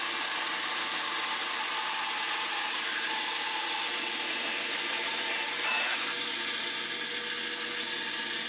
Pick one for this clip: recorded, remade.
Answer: recorded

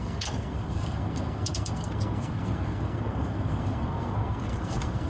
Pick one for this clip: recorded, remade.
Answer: remade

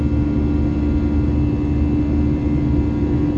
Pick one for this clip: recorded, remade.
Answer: recorded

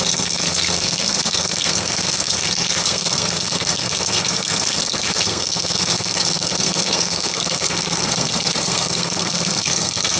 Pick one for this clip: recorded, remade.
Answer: remade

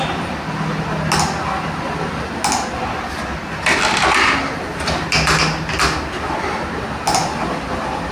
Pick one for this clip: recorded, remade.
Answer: recorded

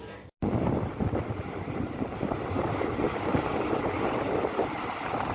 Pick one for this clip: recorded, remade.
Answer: recorded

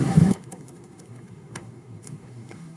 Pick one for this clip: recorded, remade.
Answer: remade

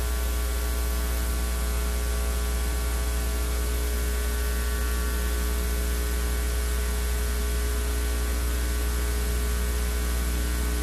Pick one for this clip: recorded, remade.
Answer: recorded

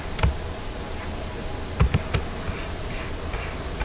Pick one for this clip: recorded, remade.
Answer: recorded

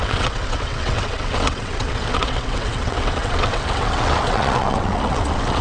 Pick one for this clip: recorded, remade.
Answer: remade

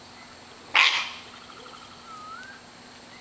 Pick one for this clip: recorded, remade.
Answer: recorded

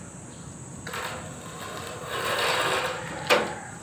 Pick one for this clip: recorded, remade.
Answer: recorded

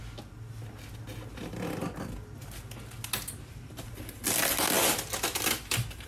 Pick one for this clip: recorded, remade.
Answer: recorded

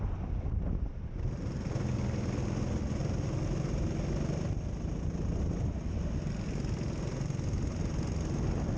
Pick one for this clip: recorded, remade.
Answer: recorded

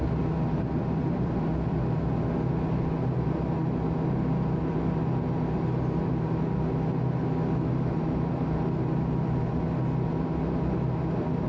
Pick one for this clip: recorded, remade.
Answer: recorded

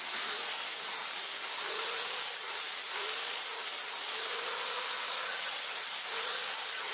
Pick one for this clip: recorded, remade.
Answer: recorded